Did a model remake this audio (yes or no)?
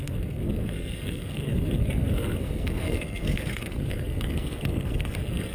yes